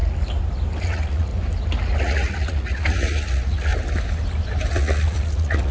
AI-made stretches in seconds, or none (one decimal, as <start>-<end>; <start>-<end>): 0.8-1.3; 2.0-3.7; 4.7-5.7